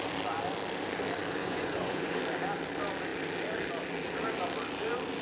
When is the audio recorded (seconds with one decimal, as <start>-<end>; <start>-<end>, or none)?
0.0-1.4; 2.2-5.2